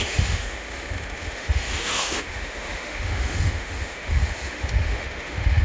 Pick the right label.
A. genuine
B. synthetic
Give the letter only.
B